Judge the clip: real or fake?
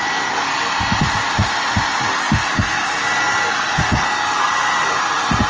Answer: real